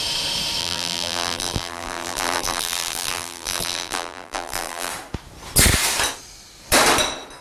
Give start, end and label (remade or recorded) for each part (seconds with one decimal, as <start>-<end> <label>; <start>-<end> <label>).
0.0-0.6 recorded; 0.6-4.9 remade; 4.9-7.4 recorded